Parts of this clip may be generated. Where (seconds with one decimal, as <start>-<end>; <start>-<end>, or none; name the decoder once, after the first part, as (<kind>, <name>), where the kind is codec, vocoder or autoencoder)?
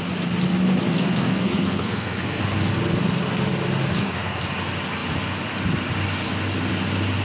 0.9-2.4 (codec, SNAC); 3.8-4.4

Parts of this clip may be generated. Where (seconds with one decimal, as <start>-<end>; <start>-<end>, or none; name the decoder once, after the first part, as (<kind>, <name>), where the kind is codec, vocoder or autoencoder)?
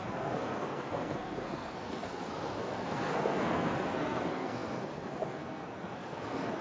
0.0-6.6 (codec, SNAC)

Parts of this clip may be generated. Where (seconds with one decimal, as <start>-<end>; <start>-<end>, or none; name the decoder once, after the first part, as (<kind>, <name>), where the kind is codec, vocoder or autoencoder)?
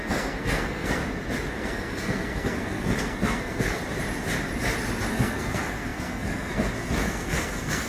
0.0-1.0 (codec, SNAC); 1.5-3.8; 5.1-7.9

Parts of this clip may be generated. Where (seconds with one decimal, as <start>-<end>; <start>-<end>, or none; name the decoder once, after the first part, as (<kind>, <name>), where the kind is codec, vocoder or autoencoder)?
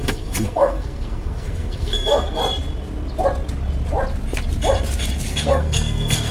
0.0-2.4 (codec, SNAC); 5.3-6.3